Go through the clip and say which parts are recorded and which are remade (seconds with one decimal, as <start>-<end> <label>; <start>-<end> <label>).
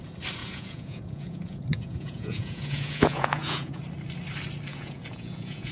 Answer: 0.0-0.4 recorded; 0.4-3.8 remade; 3.8-4.7 recorded; 4.7-5.7 remade